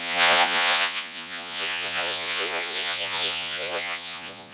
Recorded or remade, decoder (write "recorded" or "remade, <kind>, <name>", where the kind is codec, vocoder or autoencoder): remade, vocoder, Vocos